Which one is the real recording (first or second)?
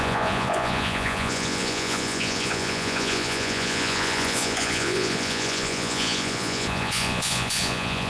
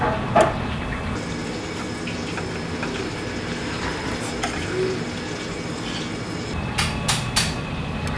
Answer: second